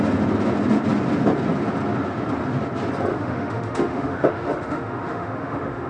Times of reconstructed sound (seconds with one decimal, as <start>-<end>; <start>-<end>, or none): 3.1-5.9